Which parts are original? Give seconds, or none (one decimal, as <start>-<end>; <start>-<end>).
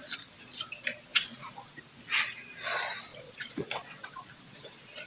0.0-1.1; 1.8-3.1